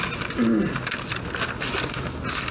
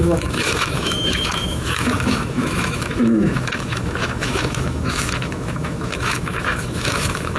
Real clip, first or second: first